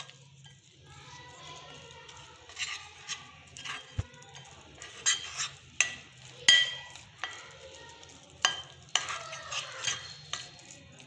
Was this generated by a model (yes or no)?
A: no